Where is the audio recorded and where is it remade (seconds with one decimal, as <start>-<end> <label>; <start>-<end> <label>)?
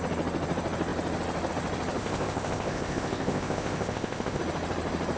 0.0-2.0 recorded; 2.0-4.4 remade; 4.4-5.2 recorded